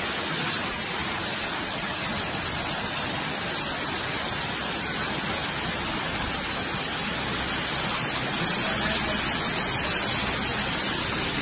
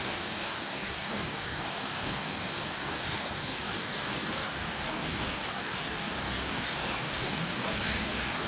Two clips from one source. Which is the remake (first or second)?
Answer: second